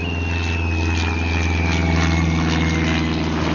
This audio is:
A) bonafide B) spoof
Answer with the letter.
A